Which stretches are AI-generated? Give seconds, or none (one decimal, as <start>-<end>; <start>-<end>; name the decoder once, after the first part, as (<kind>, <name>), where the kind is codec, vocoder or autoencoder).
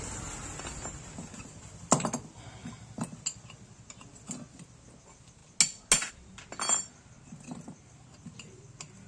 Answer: none